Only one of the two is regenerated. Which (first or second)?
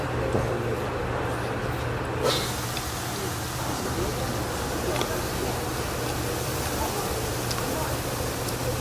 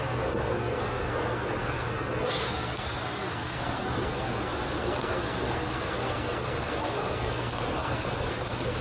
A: second